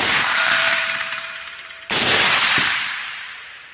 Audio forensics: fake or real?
fake